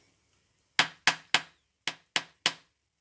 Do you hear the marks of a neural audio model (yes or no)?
no